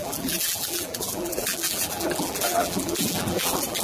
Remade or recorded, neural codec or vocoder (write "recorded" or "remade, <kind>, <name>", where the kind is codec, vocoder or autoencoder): remade, vocoder, BigVGAN v2